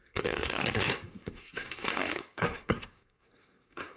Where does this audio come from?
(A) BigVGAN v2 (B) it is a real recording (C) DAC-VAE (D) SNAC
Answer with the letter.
D